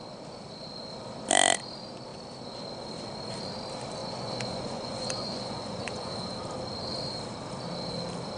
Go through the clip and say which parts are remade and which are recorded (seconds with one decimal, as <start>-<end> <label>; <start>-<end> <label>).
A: 0.0-4.0 recorded; 4.0-6.4 remade; 6.4-8.4 recorded

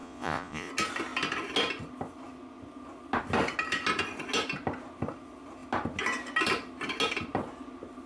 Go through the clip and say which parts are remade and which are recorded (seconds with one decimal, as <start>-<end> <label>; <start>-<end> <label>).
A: 0.0-0.7 remade; 0.7-8.1 recorded